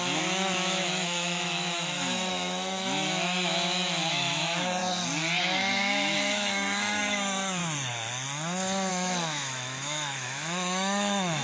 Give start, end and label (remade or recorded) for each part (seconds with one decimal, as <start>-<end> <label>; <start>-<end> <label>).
0.0-4.8 remade; 4.8-5.6 recorded; 5.6-7.6 remade; 7.6-8.9 recorded; 8.9-11.4 remade